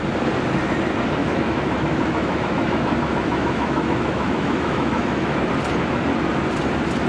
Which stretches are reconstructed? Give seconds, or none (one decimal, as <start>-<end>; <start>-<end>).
1.2-5.5